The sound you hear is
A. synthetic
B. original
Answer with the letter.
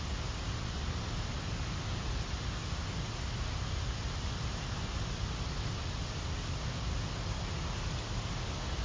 B